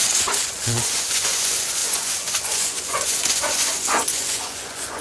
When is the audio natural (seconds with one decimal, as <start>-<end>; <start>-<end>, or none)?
none